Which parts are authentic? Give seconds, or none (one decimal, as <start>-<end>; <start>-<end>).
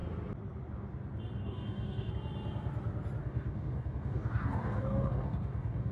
0.0-1.4; 2.1-3.2